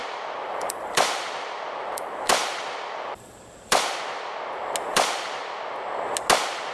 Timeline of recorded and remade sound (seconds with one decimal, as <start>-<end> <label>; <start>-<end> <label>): 0.0-4.0 remade; 4.0-4.9 recorded; 4.9-5.4 remade; 5.4-6.7 recorded